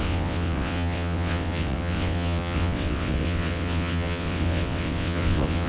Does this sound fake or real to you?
fake